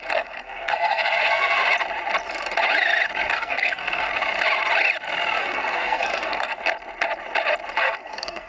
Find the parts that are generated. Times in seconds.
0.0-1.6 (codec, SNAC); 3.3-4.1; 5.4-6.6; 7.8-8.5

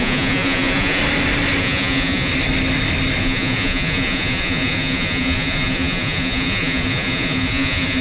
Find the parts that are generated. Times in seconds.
0.0-1.0 (vocoder, Vocos); 1.6-2.3; 3.2-8.0

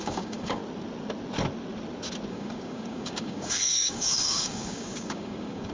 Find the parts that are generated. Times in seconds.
0.0-0.6 (codec, DAC); 2.3-5.7

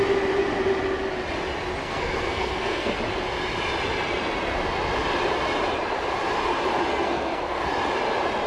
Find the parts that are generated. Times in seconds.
1.8-3.0 (codec, SNAC); 6.9-7.7